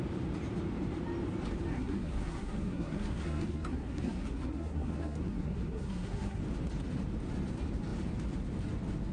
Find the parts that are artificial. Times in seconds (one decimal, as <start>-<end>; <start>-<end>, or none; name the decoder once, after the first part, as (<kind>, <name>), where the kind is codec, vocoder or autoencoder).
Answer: 1.7-6.4 (codec, SNAC)